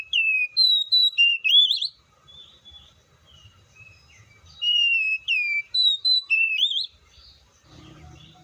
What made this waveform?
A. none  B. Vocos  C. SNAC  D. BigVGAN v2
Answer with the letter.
D